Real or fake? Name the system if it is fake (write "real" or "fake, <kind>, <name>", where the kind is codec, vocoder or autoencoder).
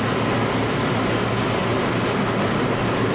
real